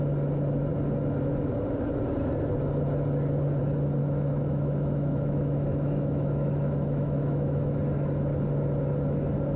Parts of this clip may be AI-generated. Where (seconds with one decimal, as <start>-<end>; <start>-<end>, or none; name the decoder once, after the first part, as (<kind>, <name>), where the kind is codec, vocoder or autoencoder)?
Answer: 4.0-7.8 (autoencoder, DAC-VAE)